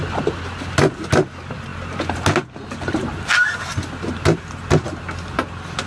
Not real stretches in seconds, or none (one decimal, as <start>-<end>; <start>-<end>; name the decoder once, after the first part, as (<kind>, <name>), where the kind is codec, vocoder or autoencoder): none